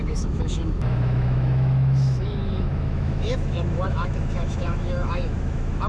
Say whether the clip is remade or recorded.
remade